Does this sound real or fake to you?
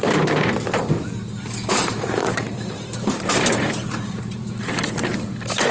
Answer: fake